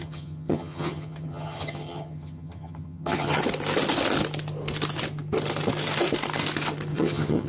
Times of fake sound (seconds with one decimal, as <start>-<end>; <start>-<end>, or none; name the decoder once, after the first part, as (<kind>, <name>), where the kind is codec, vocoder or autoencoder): 0.0-3.4 (vocoder, HiFi-GAN); 6.9-7.5